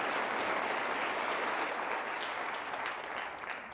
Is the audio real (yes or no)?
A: yes